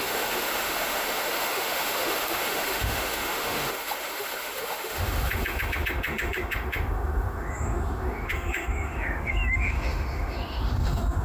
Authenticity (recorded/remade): remade